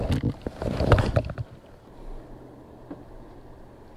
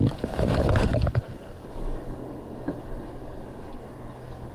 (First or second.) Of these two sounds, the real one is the first